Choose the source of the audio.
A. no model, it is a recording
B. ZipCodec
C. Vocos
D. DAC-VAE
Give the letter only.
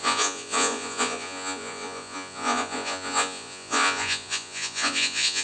C